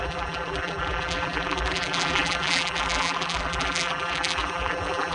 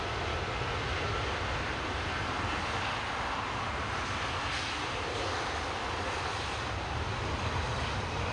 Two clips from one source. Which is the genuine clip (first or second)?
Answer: second